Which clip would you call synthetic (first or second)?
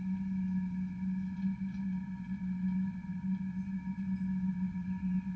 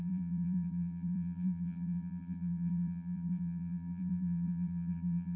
second